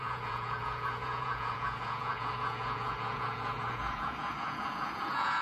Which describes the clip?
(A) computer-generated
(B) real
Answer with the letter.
A